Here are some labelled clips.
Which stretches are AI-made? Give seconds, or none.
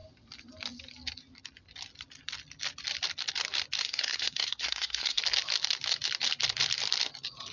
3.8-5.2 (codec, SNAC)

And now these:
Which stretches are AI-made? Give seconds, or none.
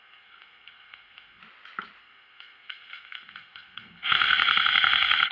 0.0-1.4 (codec, SNAC); 2.0-5.3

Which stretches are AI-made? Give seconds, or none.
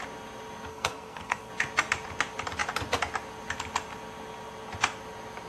0.7-1.5 (codec, SNAC)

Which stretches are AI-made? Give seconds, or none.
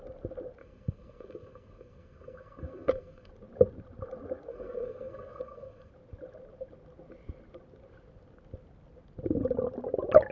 0.6-3.3 (codec, SNAC); 4.5-5.9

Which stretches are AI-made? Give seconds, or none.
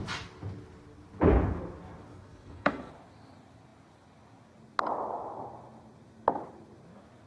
2.1-2.9 (codec, SNAC)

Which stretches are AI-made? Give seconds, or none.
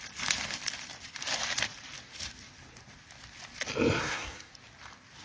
4.0-4.5 (codec, SNAC)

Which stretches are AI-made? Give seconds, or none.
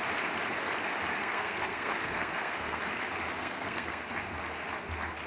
1.2-2.8 (codec, SNAC); 3.4-4.1